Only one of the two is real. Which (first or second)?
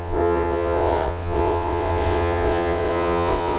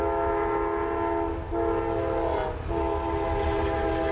second